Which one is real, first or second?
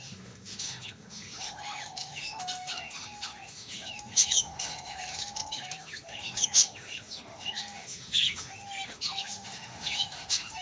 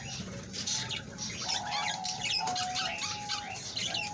second